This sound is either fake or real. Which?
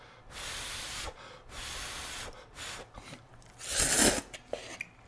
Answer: real